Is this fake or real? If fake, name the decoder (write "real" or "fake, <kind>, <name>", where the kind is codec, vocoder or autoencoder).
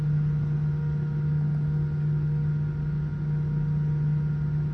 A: real